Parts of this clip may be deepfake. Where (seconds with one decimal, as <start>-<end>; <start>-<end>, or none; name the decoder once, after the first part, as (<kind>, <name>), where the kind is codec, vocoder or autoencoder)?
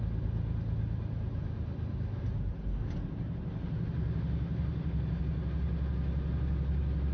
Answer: 2.1-5.2 (vocoder, BigVGAN v2)